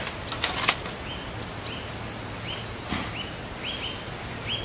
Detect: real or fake real